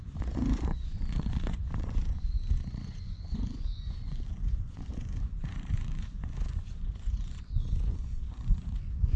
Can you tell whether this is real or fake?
fake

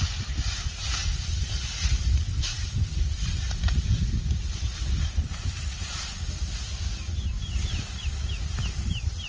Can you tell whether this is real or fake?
real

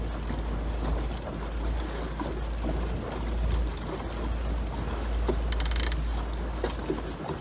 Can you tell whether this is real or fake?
real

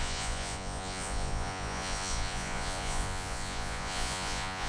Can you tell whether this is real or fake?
fake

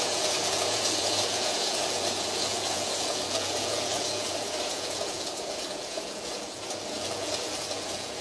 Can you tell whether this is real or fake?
fake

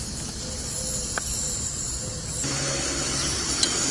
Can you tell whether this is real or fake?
real